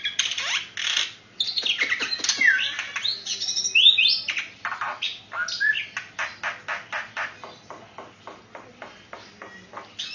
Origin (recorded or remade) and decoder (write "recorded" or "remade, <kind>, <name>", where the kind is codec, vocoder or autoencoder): recorded